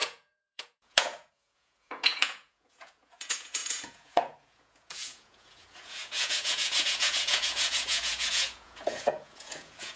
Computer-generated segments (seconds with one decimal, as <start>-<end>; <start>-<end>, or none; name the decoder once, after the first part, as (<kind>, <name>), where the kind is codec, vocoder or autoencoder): 0.0-10.0 (vocoder, Vocos)